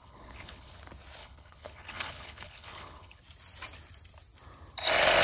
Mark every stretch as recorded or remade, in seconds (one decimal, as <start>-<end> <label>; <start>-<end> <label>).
0.0-0.7 remade; 0.7-1.2 recorded; 1.2-3.2 remade; 3.2-5.2 recorded